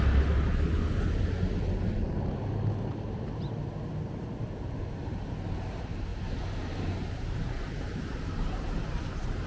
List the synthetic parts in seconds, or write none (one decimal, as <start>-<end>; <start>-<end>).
6.1-9.0